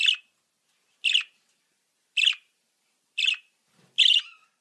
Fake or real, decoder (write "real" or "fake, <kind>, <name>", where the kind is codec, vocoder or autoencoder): real